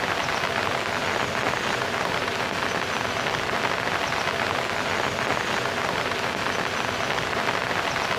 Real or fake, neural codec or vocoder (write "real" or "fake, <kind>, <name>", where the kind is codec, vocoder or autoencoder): real